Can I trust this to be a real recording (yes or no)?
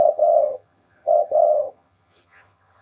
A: no